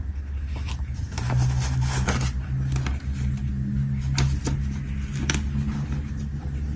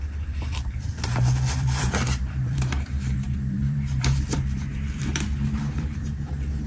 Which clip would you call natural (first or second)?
first